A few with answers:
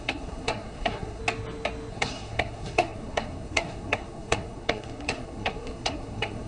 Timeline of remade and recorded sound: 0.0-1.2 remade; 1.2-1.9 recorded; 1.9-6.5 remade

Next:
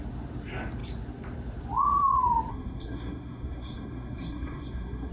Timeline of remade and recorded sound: 0.0-2.5 recorded; 2.5-5.1 remade